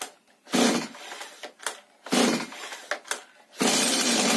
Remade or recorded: recorded